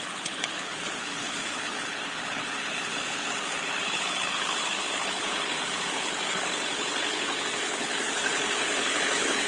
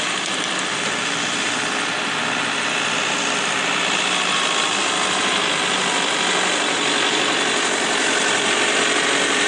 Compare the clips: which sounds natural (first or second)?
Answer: second